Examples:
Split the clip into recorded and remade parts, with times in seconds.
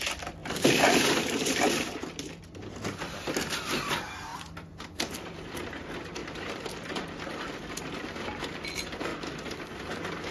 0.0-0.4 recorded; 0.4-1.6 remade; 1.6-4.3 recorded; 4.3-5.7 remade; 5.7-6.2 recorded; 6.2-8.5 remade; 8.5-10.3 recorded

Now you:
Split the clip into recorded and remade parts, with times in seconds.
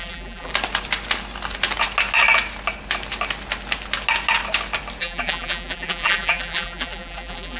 0.0-0.5 remade; 0.5-5.0 recorded; 5.0-7.6 remade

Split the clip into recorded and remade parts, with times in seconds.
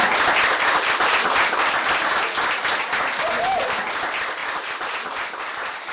0.0-4.4 recorded; 4.4-5.9 remade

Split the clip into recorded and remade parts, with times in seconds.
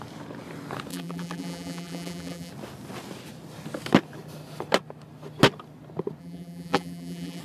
0.0-0.9 recorded; 0.9-2.5 remade; 2.5-6.2 recorded; 6.2-7.4 remade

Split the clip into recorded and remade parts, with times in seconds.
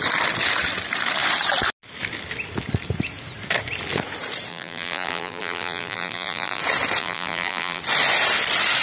0.0-4.5 recorded; 4.5-6.6 remade; 6.6-7.0 recorded; 7.0-7.8 remade; 7.8-8.8 recorded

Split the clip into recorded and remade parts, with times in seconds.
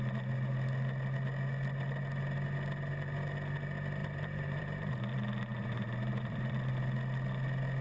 0.0-4.0 recorded; 4.0-5.0 remade; 5.0-5.5 recorded; 5.5-6.7 remade; 6.7-7.8 recorded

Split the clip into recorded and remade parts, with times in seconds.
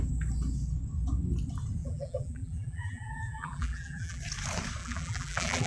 0.0-1.8 recorded; 1.8-4.2 remade; 4.2-4.8 recorded; 4.8-5.7 remade